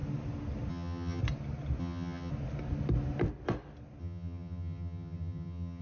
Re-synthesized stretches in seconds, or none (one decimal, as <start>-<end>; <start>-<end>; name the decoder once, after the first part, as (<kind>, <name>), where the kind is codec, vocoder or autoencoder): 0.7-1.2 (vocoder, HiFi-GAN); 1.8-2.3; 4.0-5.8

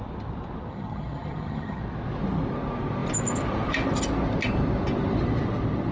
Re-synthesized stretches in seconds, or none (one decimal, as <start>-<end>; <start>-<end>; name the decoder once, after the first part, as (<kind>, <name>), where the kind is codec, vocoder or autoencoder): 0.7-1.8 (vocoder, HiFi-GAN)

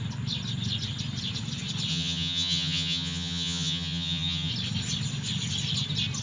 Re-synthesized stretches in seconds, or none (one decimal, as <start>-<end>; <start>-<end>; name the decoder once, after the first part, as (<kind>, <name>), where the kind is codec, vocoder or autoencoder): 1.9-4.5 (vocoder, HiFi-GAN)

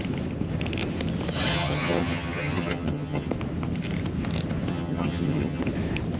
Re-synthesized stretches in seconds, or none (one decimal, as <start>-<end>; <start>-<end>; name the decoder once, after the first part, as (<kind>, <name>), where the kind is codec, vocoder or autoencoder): 1.5-3.3 (vocoder, HiFi-GAN); 4.7-5.6

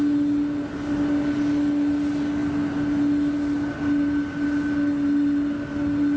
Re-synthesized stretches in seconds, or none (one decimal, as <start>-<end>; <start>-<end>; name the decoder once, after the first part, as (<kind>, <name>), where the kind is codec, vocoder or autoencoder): none

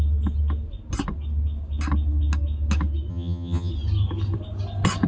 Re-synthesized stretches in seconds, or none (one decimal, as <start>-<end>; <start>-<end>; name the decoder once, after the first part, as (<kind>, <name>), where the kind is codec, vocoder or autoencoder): 3.1-3.7 (vocoder, HiFi-GAN)

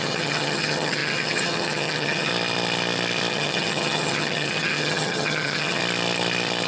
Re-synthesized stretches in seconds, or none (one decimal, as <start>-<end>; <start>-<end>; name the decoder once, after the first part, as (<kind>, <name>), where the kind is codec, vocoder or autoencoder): 0.0-2.3 (vocoder, HiFi-GAN); 3.3-5.8